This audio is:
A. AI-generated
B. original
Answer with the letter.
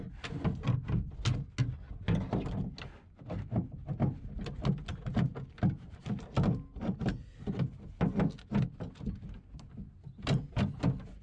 B